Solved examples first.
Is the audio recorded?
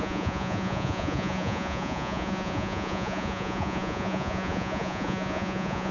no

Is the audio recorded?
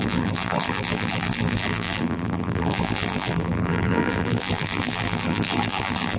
no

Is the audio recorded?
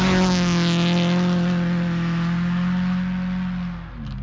yes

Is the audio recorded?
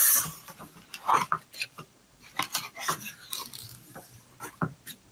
no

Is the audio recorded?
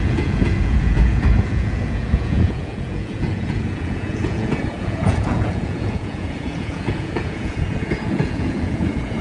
no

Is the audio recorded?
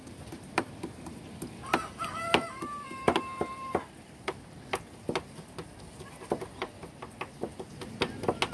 yes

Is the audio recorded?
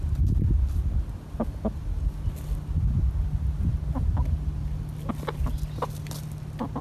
yes